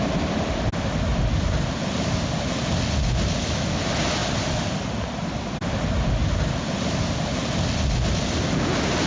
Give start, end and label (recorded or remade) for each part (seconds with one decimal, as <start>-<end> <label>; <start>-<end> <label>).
0.0-9.1 recorded